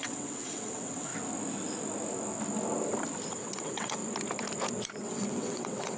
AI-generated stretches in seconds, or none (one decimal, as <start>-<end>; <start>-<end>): 0.0-1.1; 3.3-4.0; 5.0-6.0